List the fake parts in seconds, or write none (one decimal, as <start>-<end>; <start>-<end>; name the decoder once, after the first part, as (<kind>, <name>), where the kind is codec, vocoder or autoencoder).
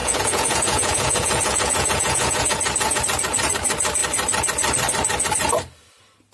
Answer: 0.0-3.0 (vocoder, Vocos)